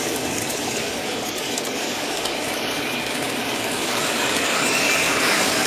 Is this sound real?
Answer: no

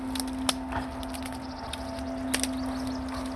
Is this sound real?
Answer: yes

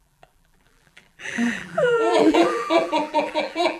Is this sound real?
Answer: no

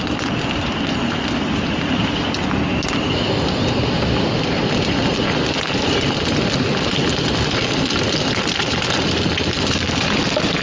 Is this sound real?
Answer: yes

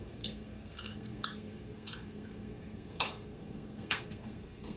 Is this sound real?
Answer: no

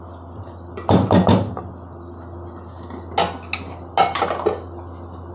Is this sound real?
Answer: yes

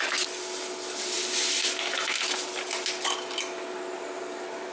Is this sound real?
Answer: yes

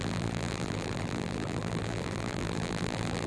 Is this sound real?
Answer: no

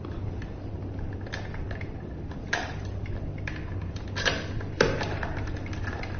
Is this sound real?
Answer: no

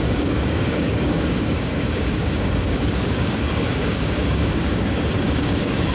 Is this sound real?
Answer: no